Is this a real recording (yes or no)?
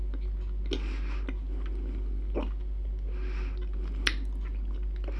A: yes